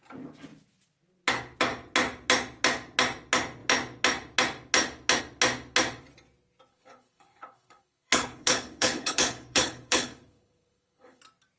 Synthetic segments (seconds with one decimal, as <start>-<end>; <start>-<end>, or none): 6.7-11.2

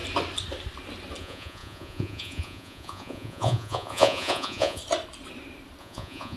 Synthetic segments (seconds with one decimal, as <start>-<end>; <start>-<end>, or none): 1.2-4.8; 5.8-6.4